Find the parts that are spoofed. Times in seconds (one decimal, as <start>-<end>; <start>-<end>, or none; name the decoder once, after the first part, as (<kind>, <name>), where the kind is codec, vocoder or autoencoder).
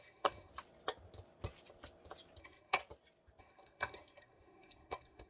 0.0-0.5 (codec, SNAC); 2.4-2.8; 3.4-5.3